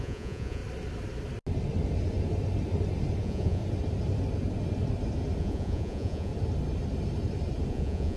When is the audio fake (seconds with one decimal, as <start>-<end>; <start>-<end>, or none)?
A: 0.0-0.6; 3.2-3.6; 5.4-6.3; 7.7-8.2